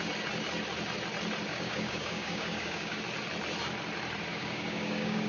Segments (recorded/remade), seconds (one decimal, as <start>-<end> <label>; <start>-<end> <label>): 0.0-1.5 recorded; 1.5-3.0 remade; 3.0-4.3 recorded; 4.3-5.3 remade